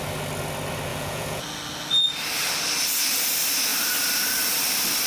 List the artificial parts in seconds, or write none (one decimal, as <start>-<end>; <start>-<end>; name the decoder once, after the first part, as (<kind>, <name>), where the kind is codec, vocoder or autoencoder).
0.9-1.4 (vocoder, Vocos)